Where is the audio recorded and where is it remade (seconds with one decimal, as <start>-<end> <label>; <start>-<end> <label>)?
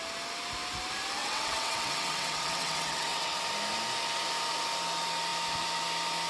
0.0-1.2 recorded; 1.2-3.4 remade; 3.4-6.3 recorded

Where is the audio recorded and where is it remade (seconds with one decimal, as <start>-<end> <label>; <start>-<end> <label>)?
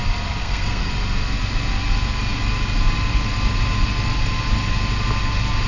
0.0-0.4 recorded; 0.4-0.9 remade; 0.9-5.7 recorded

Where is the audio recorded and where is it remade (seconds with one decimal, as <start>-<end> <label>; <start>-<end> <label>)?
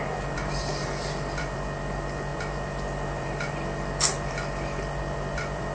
0.0-5.7 remade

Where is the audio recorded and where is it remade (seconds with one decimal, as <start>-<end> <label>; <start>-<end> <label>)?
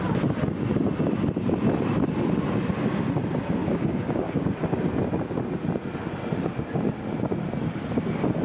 0.0-3.6 recorded; 3.6-4.5 remade; 4.5-8.4 recorded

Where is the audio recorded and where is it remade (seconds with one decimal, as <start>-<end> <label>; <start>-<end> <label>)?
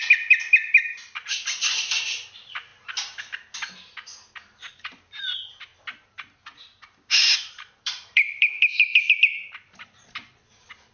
0.0-2.7 remade; 2.7-4.7 recorded; 4.7-5.7 remade; 5.7-7.5 recorded; 7.5-10.9 remade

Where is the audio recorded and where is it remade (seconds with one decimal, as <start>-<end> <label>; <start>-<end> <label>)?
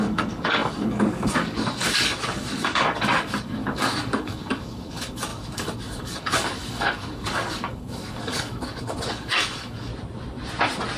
0.0-9.9 remade; 9.9-11.0 recorded